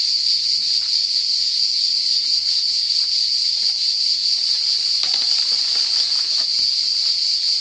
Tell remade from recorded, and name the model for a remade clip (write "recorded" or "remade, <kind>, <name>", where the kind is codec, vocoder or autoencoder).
recorded